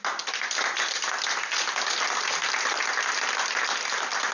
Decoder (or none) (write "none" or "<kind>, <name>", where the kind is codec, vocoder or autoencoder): none